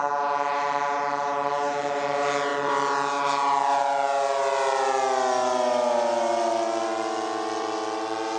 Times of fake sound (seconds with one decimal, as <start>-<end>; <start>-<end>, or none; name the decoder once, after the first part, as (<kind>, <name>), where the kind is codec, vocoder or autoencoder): none